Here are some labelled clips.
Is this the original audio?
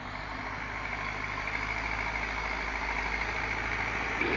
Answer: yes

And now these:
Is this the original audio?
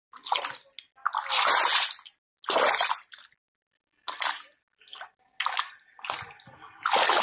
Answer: yes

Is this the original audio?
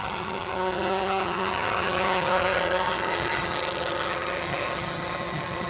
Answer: no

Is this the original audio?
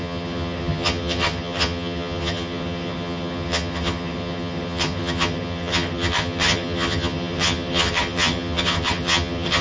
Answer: no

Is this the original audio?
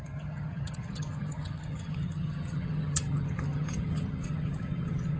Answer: no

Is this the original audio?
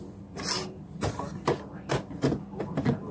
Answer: yes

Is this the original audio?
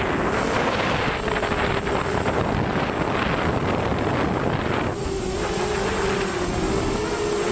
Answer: yes